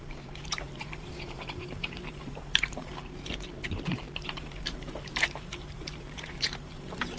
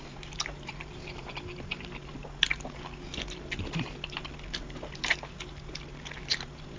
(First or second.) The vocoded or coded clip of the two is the first